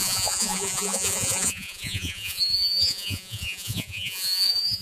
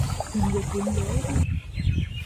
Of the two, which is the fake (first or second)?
first